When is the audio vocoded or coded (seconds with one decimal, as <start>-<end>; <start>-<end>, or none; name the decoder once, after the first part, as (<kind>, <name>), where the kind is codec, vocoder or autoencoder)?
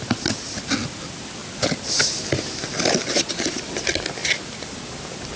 none